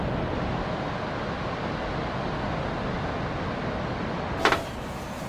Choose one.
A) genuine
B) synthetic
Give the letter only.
A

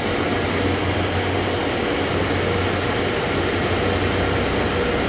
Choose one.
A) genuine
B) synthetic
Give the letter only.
A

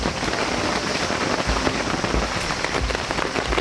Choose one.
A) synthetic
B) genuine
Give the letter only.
B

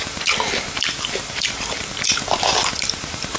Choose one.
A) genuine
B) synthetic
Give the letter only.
B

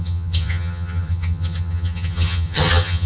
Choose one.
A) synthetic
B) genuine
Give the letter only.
A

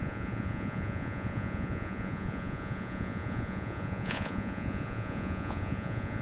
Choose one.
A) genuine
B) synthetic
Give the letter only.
B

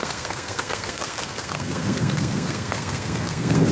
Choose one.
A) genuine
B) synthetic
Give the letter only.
B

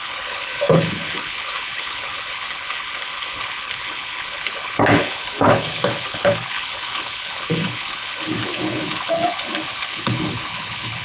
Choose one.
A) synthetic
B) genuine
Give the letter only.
A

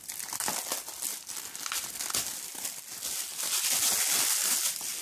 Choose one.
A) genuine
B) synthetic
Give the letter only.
A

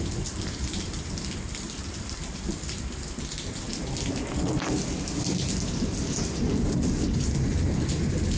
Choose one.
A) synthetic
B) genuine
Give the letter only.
A